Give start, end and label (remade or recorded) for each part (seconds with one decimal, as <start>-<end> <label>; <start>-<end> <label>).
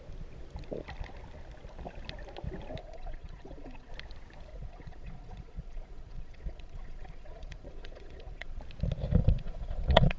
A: 0.0-2.8 recorded; 2.8-3.9 remade; 3.9-4.5 recorded; 4.5-8.6 remade; 8.6-9.2 recorded; 9.2-10.2 remade